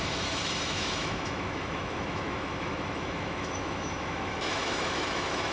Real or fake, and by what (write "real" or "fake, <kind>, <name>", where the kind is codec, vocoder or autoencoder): fake, autoencoder, DAC-VAE